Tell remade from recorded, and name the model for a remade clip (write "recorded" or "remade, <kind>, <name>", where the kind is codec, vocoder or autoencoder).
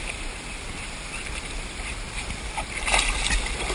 recorded